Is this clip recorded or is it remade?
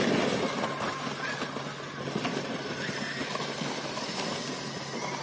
recorded